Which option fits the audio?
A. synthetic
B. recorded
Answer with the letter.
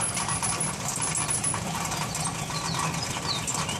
B